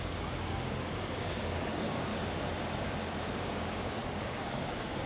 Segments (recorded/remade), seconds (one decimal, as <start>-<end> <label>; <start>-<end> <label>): 0.0-2.1 remade; 2.1-3.2 recorded; 3.2-5.1 remade